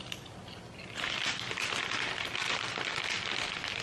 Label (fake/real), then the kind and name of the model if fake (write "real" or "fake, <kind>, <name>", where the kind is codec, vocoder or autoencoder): real